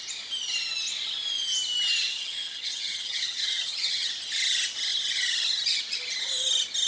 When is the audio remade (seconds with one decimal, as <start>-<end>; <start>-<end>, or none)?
2.1-4.1